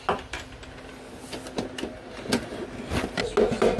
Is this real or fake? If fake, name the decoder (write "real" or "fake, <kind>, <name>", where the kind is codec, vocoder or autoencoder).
real